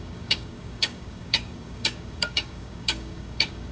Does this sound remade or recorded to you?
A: remade